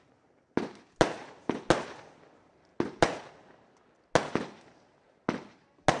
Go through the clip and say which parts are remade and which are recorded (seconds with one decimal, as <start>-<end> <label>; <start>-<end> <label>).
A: 0.0-6.0 recorded